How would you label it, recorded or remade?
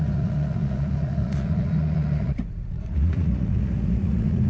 remade